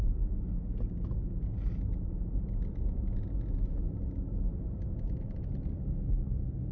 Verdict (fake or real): real